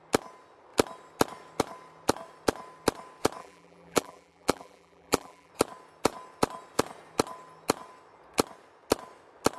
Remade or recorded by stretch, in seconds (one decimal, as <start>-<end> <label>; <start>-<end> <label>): 0.0-3.4 recorded; 3.4-5.5 remade; 5.5-9.6 recorded